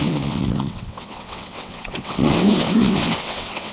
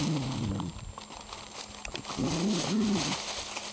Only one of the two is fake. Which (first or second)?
first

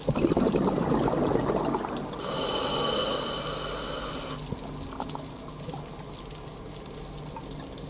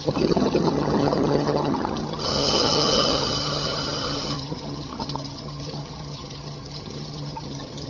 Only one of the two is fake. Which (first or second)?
second